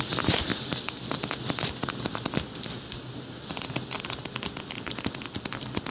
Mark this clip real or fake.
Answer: fake